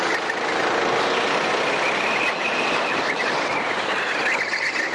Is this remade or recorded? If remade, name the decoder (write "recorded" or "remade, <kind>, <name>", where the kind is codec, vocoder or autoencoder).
recorded